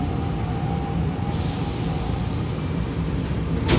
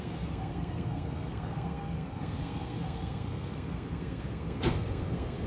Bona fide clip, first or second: first